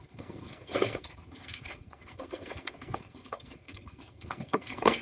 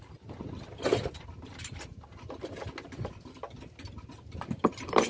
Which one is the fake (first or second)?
first